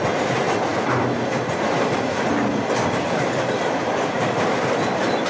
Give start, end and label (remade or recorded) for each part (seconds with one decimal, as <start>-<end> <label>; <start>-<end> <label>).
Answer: 0.0-5.3 recorded